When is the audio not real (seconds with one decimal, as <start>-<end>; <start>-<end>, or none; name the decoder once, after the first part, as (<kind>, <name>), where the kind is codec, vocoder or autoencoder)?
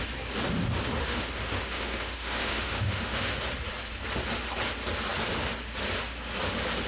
1.0-3.4 (autoencoder, DAC-VAE)